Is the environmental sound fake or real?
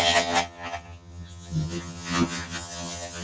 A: fake